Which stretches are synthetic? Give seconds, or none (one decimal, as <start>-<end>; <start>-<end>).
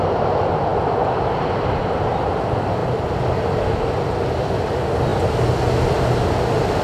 none